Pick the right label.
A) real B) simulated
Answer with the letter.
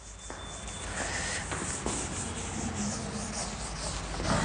A